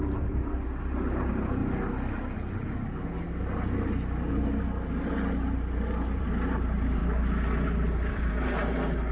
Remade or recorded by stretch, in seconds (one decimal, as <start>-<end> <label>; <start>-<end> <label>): 0.0-1.6 remade; 1.6-6.2 recorded; 6.2-7.0 remade; 7.0-8.1 recorded; 8.1-9.1 remade